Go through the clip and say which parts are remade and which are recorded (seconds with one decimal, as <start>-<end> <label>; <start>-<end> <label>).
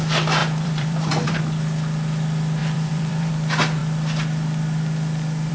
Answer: 0.0-0.4 recorded; 0.4-1.4 remade; 1.4-2.6 recorded; 2.6-3.3 remade; 3.3-5.5 recorded